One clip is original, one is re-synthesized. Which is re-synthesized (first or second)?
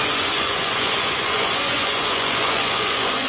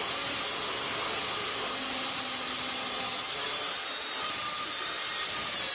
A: first